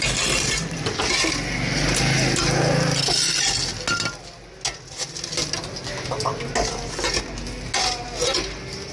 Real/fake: real